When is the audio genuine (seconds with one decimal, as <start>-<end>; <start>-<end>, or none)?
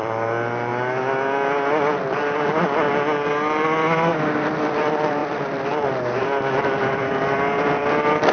0.7-3.3; 4.1-4.8